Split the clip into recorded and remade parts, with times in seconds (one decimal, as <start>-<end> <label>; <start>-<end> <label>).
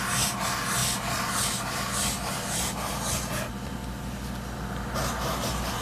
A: 0.0-5.8 recorded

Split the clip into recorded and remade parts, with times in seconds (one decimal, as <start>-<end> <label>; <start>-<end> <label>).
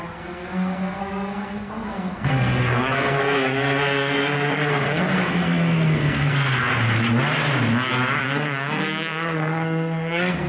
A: 0.0-6.7 remade; 6.7-8.2 recorded; 8.2-10.5 remade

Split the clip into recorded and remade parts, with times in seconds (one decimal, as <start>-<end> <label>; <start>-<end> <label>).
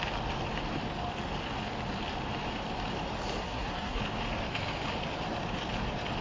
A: 0.0-3.4 recorded; 3.4-4.0 remade; 4.0-6.2 recorded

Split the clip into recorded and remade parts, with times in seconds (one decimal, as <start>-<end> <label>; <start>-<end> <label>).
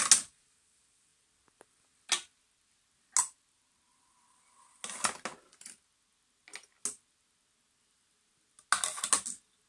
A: 0.0-9.7 recorded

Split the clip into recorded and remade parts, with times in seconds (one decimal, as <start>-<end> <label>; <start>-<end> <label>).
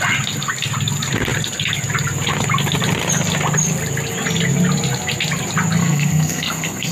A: 0.0-5.8 recorded; 5.8-6.9 remade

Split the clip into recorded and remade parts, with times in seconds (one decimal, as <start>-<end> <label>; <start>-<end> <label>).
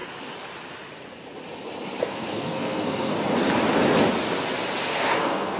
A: 0.0-2.0 recorded; 2.0-3.1 remade; 3.1-4.9 recorded; 4.9-5.6 remade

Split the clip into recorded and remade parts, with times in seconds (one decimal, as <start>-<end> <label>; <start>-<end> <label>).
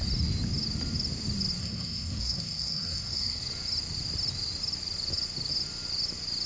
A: 0.0-1.6 recorded; 1.6-3.4 remade; 3.4-6.5 recorded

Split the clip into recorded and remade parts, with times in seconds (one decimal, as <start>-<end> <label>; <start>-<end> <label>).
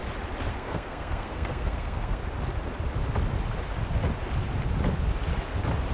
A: 0.0-0.5 recorded; 0.5-2.2 remade; 2.2-5.9 recorded